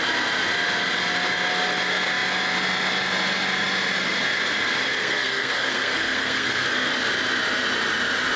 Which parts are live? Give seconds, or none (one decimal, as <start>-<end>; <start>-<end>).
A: 0.0-5.0; 6.9-8.4

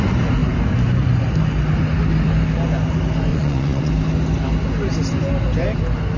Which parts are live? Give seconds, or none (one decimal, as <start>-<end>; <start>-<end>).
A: 0.0-3.3; 3.9-6.2